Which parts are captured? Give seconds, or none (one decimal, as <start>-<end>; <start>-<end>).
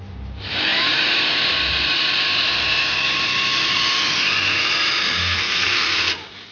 0.0-5.2; 6.1-6.5